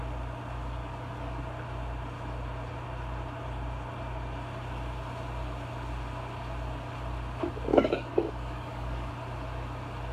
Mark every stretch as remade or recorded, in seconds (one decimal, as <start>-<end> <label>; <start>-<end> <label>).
0.0-0.8 recorded; 0.8-1.4 remade; 1.4-7.7 recorded; 7.7-9.1 remade; 9.1-10.1 recorded